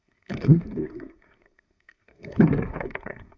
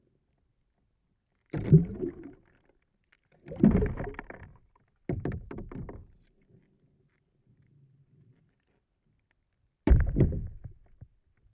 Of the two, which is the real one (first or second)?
second